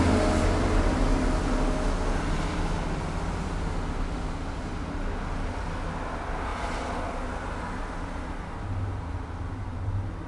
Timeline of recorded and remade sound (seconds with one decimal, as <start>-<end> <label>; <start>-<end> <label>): 0.0-10.3 recorded